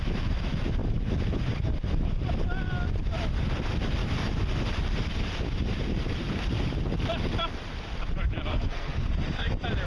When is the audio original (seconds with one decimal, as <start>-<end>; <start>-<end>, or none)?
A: 0.0-8.5; 9.1-9.9